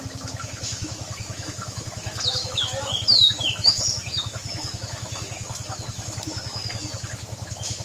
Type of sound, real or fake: fake